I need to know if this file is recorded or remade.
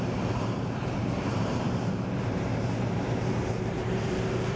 remade